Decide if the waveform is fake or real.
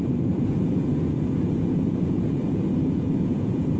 fake